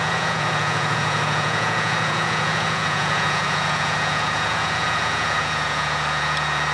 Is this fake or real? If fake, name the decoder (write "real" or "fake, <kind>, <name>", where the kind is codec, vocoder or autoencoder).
fake, vocoder, Vocos